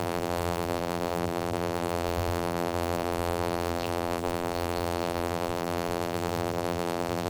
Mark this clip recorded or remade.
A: remade